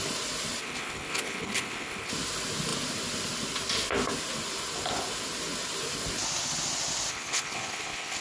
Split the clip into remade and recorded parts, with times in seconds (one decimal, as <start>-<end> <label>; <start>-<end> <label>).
0.0-0.6 recorded; 0.6-2.1 remade; 2.1-7.1 recorded; 7.1-8.2 remade